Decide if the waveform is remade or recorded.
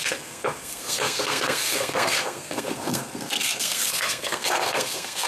remade